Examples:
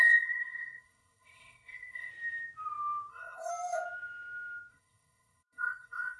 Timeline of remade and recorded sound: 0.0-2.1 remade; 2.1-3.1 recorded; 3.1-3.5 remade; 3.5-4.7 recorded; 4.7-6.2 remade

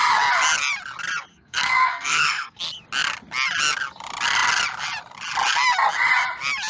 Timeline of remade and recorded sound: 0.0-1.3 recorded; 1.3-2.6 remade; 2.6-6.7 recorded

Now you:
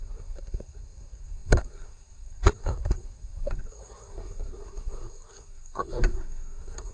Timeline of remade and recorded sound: 0.0-6.9 remade

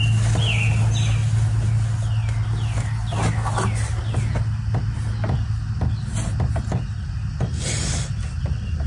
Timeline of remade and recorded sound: 0.0-8.9 recorded

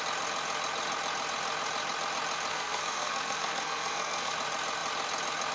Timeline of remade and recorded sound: 0.0-2.5 recorded; 2.5-4.3 remade; 4.3-5.5 recorded